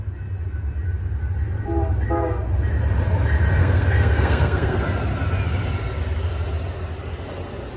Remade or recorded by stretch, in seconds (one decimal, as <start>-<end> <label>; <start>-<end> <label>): 0.0-3.6 recorded; 3.6-4.8 remade; 4.8-7.8 recorded